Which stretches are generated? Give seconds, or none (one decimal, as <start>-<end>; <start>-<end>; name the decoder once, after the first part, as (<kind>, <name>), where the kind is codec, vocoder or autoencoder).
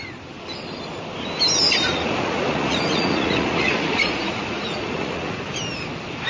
1.9-5.4 (vocoder, Vocos)